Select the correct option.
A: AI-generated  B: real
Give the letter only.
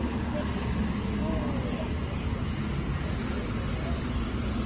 B